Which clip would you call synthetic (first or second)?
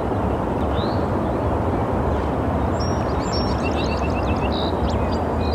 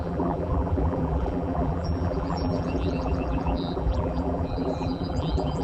second